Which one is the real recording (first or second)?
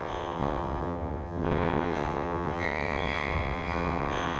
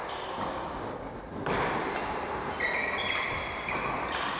second